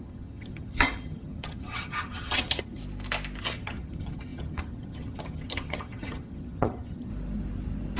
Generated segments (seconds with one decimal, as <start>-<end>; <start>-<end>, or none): 0.0-2.8; 3.4-7.1

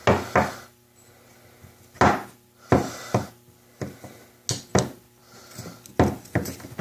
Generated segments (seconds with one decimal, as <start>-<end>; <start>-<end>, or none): none

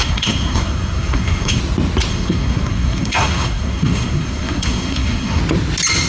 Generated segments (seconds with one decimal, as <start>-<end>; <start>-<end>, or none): 0.0-1.6; 2.1-5.4

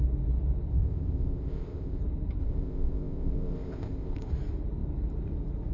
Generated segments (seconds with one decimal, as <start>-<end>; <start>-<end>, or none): 0.7-2.0; 2.4-4.3

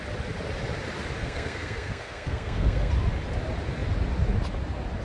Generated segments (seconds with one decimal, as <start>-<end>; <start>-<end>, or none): 1.2-2.9